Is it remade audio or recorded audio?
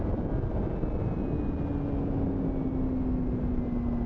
recorded